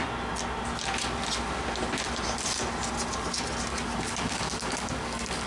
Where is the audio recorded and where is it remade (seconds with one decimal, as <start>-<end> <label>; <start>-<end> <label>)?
0.0-3.7 recorded; 3.7-5.5 remade